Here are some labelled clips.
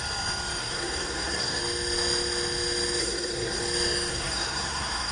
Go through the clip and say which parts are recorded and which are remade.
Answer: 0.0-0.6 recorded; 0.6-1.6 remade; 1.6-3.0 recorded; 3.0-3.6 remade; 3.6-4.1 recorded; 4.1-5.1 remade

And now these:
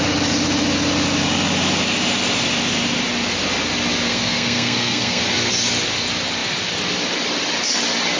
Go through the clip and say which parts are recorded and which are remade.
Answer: 0.0-4.1 recorded; 4.1-5.2 remade; 5.2-8.2 recorded

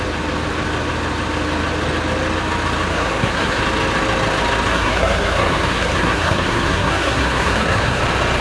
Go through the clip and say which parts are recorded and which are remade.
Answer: 0.0-2.9 recorded; 2.9-3.6 remade; 3.6-4.7 recorded; 4.7-8.0 remade; 8.0-8.4 recorded

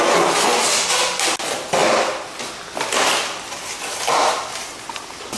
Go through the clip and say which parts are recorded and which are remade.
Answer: 0.0-5.4 recorded